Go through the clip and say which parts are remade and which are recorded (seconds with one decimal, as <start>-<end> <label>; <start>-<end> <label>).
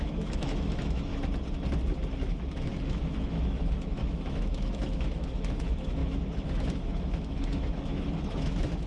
0.0-1.1 remade; 1.1-2.2 recorded; 2.2-8.9 remade